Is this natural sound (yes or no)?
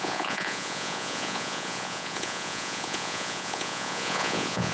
no